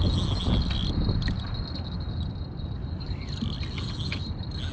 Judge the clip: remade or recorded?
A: recorded